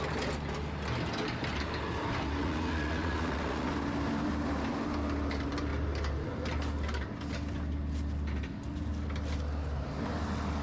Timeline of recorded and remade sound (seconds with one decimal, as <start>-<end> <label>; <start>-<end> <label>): 0.0-2.4 recorded; 2.4-3.7 remade; 3.7-10.6 recorded